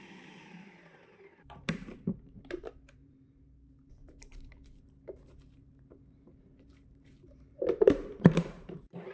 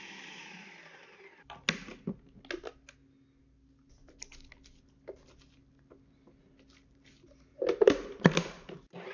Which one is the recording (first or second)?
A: second